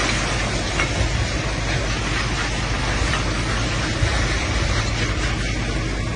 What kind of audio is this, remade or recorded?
recorded